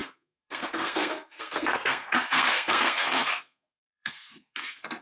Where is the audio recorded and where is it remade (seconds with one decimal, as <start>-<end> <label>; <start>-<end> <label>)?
0.0-5.0 remade